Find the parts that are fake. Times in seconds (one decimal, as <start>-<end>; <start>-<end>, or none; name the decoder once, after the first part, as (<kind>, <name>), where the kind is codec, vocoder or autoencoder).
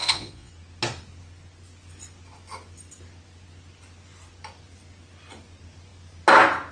0.0-0.5 (vocoder, Vocos)